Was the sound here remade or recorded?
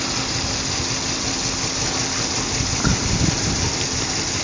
remade